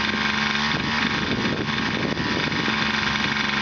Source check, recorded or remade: recorded